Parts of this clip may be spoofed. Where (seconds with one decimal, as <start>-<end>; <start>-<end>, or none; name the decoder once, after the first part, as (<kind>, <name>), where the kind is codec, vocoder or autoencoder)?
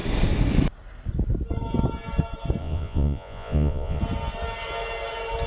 2.6-4.0 (vocoder, Vocos)